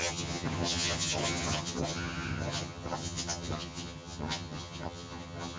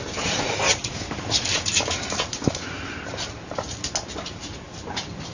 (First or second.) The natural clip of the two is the second